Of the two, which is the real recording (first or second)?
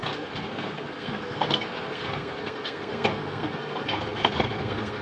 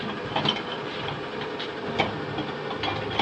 second